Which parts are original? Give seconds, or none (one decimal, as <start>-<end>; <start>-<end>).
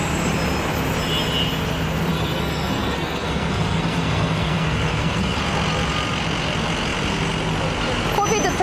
0.0-2.1; 5.4-8.6